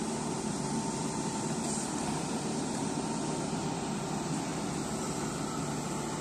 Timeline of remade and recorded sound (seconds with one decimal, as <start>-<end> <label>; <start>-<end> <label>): 0.0-4.5 remade; 4.5-6.2 recorded